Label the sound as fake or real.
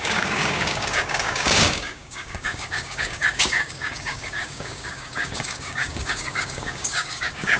fake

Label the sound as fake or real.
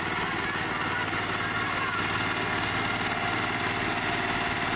real